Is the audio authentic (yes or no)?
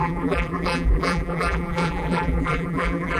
no